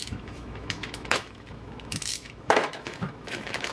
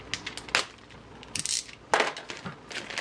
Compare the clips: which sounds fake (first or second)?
first